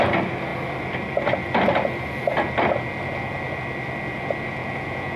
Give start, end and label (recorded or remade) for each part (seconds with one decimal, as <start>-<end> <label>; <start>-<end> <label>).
0.0-4.6 recorded; 4.6-5.2 remade

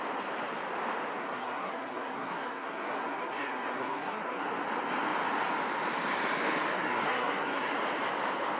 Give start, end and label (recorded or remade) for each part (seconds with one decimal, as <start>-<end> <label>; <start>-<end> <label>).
0.0-1.2 recorded; 1.2-4.4 remade; 4.4-6.7 recorded; 6.7-7.7 remade; 7.7-8.6 recorded

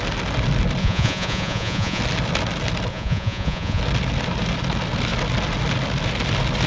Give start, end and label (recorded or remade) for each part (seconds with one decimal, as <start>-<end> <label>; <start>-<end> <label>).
0.0-0.8 recorded; 0.8-2.0 remade; 2.0-2.9 recorded; 2.9-3.8 remade; 3.8-6.7 recorded

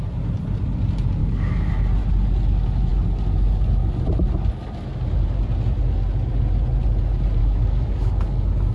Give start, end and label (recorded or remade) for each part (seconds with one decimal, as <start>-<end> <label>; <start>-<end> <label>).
0.0-1.2 recorded; 1.2-1.7 remade; 1.7-7.4 recorded; 7.4-8.1 remade; 8.1-8.7 recorded

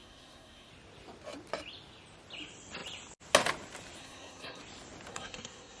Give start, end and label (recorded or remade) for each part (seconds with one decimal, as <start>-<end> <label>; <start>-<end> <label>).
0.0-0.7 remade; 0.7-4.0 recorded; 4.0-4.6 remade; 4.6-5.1 recorded; 5.1-5.8 remade

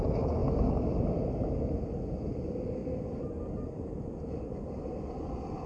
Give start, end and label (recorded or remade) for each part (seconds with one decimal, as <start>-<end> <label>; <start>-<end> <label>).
0.0-2.8 recorded; 2.8-5.3 remade; 5.3-5.7 recorded